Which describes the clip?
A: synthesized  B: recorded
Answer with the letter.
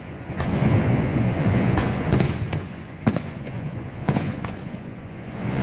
A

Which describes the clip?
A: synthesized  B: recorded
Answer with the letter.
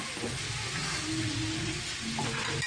B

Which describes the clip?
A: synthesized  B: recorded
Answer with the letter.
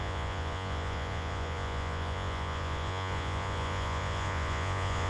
A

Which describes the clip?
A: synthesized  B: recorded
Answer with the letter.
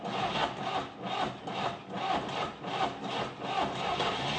B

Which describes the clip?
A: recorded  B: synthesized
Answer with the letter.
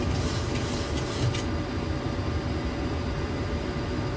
A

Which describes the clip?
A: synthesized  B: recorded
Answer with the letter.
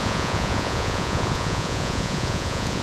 A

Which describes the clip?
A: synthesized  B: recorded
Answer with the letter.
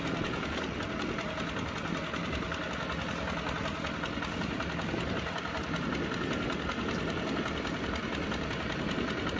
B